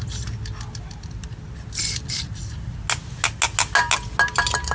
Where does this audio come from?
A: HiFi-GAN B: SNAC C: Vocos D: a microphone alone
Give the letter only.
D